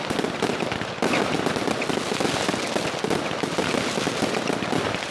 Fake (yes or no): no